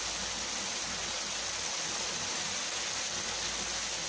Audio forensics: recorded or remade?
recorded